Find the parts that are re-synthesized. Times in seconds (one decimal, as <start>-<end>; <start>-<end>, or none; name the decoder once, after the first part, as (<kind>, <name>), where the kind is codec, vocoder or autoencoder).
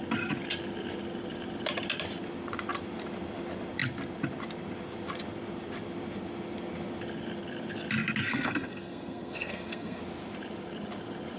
8.3-10.0 (codec, SNAC)